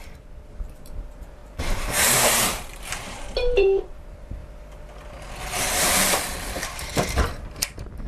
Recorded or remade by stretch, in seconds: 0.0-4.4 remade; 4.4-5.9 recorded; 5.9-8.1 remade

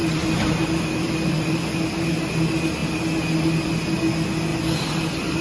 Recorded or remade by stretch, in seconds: 0.0-2.1 remade; 2.1-4.5 recorded; 4.5-5.4 remade

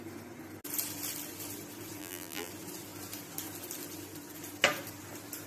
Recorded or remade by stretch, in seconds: 0.0-2.0 recorded; 2.0-2.5 remade; 2.5-5.5 recorded